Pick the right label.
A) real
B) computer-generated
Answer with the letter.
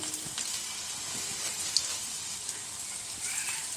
A